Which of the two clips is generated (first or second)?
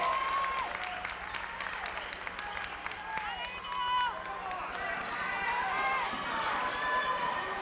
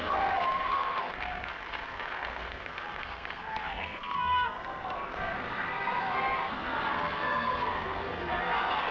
second